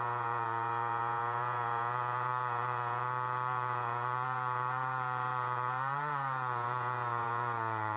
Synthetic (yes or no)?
yes